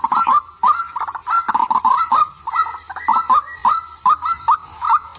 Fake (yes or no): no